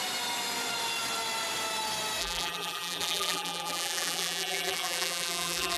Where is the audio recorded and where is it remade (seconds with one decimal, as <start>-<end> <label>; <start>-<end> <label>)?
0.0-2.2 recorded; 2.2-5.8 remade